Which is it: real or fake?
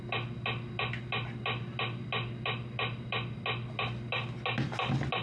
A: real